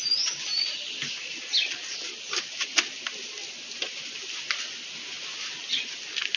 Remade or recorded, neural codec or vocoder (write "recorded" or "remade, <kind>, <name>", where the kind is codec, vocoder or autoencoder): recorded